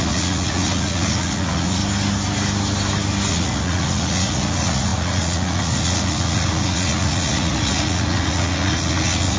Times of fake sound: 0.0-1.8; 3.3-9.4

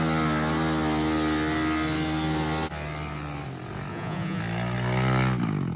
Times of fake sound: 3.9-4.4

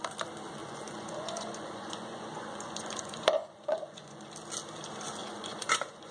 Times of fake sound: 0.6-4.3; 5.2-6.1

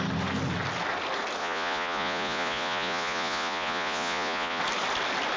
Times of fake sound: 1.4-4.6

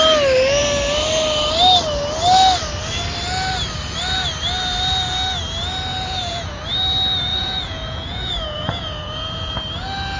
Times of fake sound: 5.9-6.6; 7.3-9.5

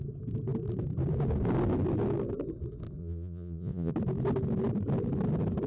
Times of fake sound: 3.0-3.9

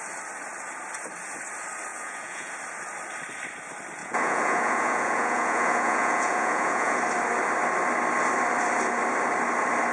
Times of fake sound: 1.9-2.5; 4.0-7.0

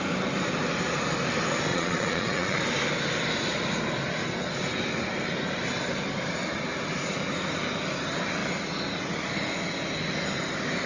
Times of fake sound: 1.7-2.6